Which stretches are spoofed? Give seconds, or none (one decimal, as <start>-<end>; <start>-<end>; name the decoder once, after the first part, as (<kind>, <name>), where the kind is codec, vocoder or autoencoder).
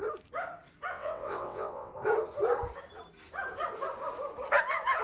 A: 0.9-1.9 (vocoder, WaveNeXt)